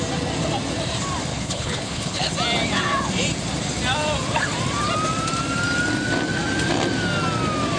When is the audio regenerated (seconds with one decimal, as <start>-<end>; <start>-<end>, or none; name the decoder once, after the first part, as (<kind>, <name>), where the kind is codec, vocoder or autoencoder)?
1.3-2.3 (codec, HILCodec)